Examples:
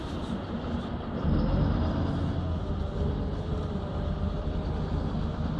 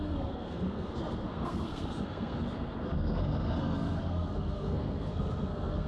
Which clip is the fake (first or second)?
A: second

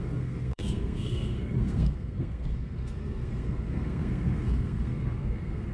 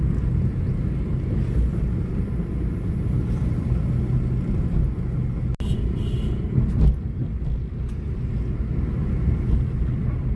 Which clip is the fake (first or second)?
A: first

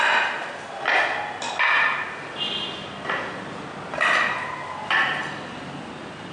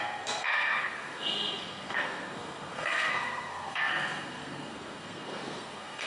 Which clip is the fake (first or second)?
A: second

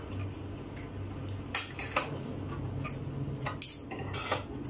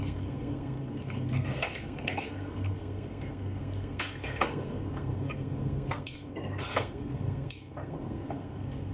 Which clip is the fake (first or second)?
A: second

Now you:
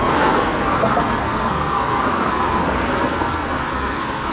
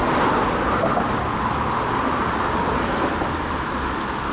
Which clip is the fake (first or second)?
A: first